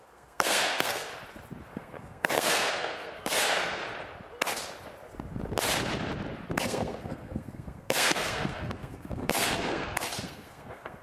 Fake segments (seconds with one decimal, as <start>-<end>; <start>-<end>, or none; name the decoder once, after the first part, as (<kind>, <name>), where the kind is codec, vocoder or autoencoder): 0.0-1.1 (codec, SNAC); 1.7-3.8; 6.6-11.0